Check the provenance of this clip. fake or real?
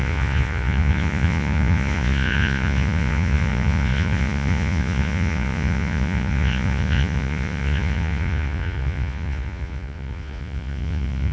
fake